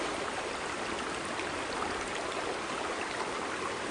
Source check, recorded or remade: recorded